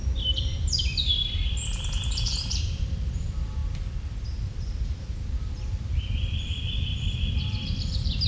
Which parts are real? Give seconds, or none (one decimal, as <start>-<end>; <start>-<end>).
3.6-4.4